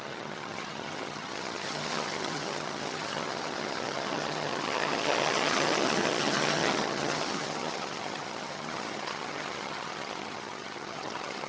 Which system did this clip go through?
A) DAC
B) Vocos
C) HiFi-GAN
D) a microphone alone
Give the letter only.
C